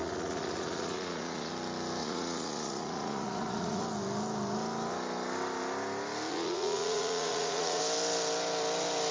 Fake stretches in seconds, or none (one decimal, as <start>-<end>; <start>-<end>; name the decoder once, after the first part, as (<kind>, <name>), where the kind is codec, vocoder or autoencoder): 0.0-1.5 (vocoder, Vocos); 2.0-3.8; 6.3-7.8